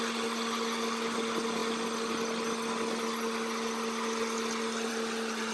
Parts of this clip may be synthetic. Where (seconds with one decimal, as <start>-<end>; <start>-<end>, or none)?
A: none